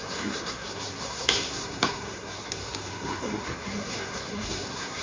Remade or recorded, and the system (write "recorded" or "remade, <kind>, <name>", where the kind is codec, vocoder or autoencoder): remade, codec, SNAC